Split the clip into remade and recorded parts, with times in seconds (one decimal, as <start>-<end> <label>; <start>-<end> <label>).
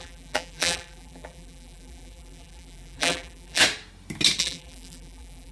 0.0-3.6 remade; 3.6-4.4 recorded; 4.4-5.5 remade